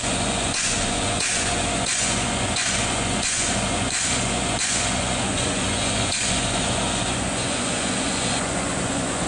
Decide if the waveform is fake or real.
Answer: fake